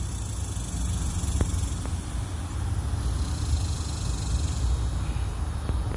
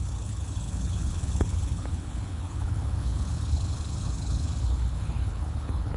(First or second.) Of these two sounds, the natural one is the first